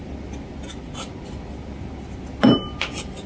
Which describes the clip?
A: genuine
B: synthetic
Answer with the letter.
A